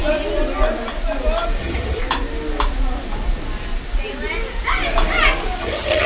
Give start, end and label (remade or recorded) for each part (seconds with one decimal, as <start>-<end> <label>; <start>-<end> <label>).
0.0-1.6 recorded; 1.6-2.0 remade; 2.0-5.6 recorded; 5.6-6.1 remade